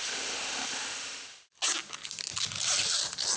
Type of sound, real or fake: real